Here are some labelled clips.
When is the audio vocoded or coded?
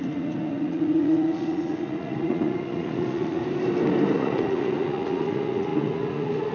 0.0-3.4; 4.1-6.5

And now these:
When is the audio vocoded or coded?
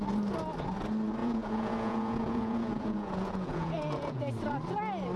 1.2-4.3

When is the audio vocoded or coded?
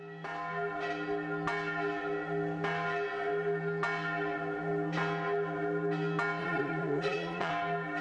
6.4-7.5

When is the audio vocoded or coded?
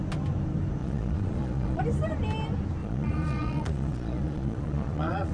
0.8-1.8; 2.8-5.3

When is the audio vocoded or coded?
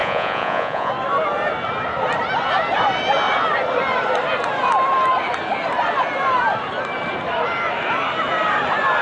0.0-0.9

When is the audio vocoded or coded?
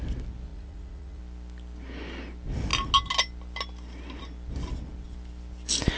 0.5-1.2